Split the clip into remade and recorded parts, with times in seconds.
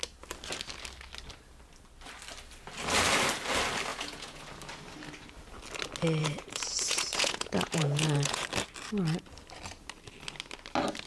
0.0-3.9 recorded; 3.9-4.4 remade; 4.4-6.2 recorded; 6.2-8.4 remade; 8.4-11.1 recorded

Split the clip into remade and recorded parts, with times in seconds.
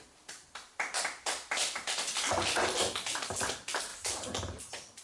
0.0-5.0 recorded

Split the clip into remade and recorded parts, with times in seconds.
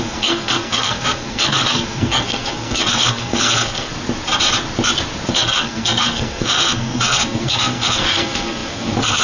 0.0-3.9 remade; 3.9-5.3 recorded; 5.3-9.2 remade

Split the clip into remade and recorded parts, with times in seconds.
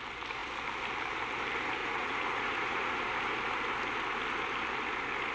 0.0-1.8 recorded; 1.8-3.0 remade; 3.0-5.3 recorded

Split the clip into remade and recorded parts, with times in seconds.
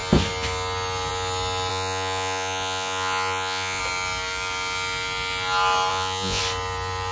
0.0-1.7 recorded; 1.7-3.8 remade; 3.8-5.9 recorded; 5.9-6.4 remade; 6.4-7.1 recorded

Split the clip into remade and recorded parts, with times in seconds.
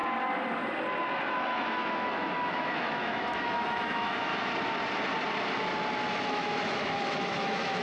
0.0-1.3 recorded; 1.3-4.3 remade; 4.3-6.2 recorded; 6.2-7.8 remade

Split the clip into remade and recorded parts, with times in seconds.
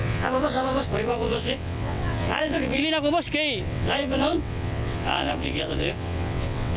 0.0-2.8 remade; 2.8-3.6 recorded; 3.6-6.8 remade